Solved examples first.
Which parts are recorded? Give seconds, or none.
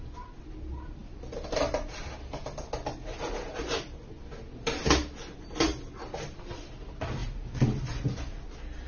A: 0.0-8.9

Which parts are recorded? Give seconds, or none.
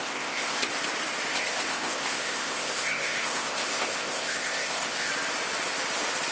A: 0.7-1.3; 5.1-6.3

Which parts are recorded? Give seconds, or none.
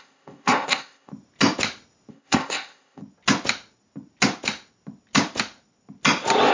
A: 1.1-2.1; 3.0-6.5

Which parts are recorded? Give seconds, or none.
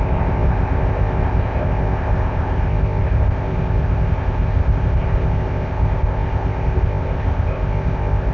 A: none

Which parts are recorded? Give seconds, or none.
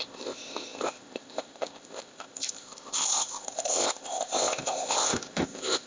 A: none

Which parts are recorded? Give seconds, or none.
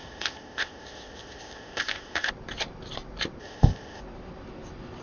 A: 2.3-3.4; 4.0-5.0